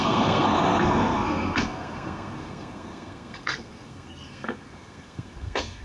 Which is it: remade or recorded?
remade